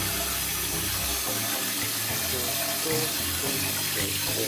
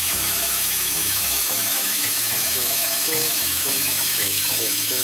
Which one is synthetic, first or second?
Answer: second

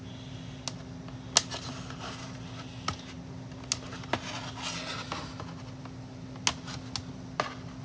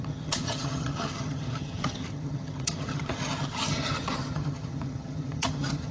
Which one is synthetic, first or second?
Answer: second